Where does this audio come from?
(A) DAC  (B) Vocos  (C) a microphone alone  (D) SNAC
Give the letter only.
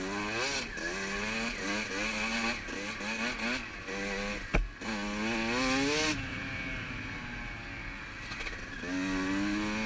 C